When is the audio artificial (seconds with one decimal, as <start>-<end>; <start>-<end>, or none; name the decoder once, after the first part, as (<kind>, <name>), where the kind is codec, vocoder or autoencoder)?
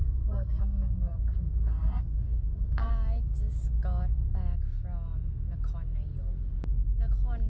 0.0-2.9 (codec, SNAC)